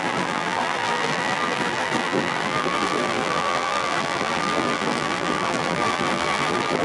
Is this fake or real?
fake